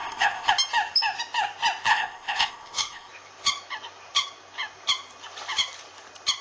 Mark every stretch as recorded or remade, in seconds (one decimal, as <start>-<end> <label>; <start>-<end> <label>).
0.0-0.5 remade; 0.5-1.9 recorded; 1.9-3.1 remade; 3.1-6.4 recorded